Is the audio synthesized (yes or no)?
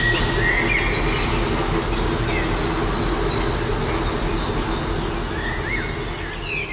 no